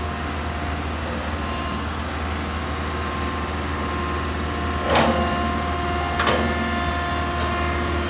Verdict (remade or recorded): recorded